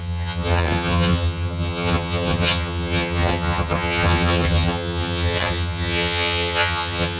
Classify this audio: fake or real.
fake